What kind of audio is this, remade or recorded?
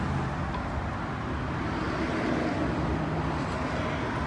recorded